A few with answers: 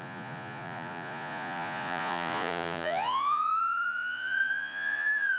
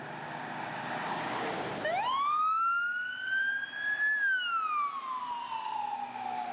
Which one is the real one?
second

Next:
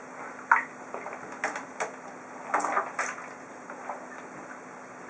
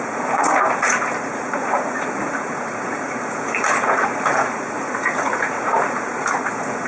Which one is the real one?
first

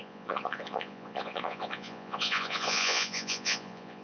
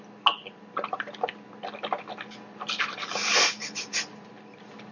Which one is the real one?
second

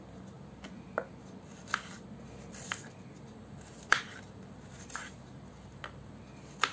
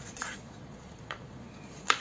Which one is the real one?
first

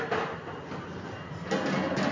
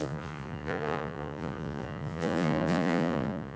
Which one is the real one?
first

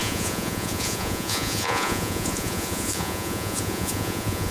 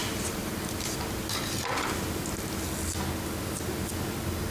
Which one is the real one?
second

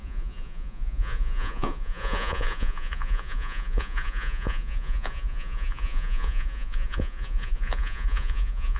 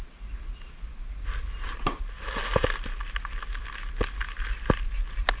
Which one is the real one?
second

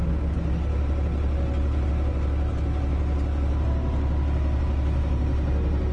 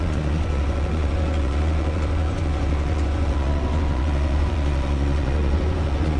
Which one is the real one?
first